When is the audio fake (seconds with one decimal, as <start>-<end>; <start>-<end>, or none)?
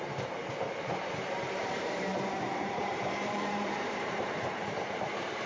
0.0-5.5